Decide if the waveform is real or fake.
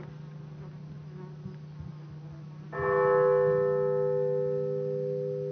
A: real